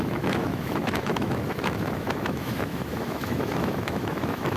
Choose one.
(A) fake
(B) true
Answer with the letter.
A